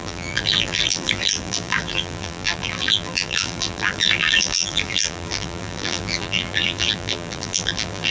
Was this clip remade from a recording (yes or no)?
yes